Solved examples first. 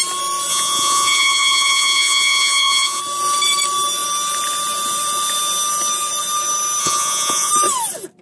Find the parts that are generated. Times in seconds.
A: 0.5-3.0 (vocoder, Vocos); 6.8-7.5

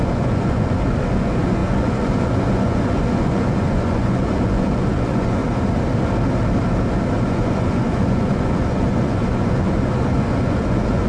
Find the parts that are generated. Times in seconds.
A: 0.0-5.4 (vocoder, Vocos); 7.2-11.1

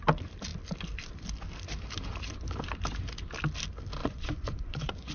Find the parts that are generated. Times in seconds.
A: 4.0-5.1 (vocoder, Vocos)